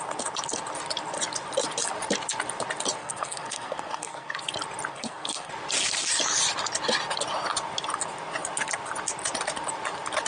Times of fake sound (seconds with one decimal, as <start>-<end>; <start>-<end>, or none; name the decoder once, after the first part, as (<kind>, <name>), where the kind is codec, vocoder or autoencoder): 3.0-4.4 (codec, SNAC); 4.9-5.5